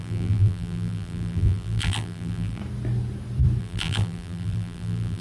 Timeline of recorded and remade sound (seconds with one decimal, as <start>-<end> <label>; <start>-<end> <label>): 0.0-2.6 remade; 2.6-3.6 recorded; 3.6-5.2 remade